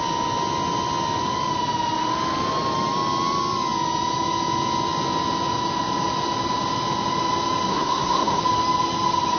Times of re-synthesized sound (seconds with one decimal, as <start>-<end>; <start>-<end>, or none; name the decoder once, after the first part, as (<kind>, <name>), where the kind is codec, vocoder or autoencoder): 7.7-8.4 (codec, SNAC)